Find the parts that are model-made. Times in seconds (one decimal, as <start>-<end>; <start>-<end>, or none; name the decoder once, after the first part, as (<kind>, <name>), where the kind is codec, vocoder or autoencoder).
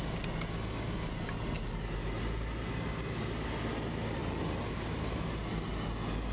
none